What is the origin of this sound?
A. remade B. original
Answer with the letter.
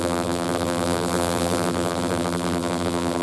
A